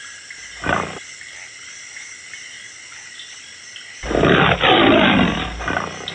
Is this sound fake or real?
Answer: real